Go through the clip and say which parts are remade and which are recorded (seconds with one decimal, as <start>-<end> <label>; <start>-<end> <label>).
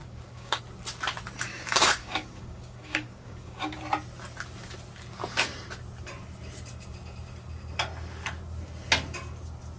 0.0-0.6 remade; 0.6-1.5 recorded; 1.5-3.8 remade; 3.8-9.8 recorded